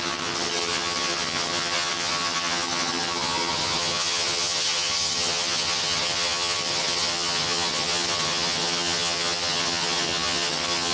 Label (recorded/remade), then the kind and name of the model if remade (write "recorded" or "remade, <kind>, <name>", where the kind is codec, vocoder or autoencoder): remade, vocoder, HiFi-GAN